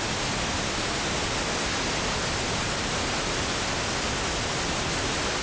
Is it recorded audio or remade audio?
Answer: recorded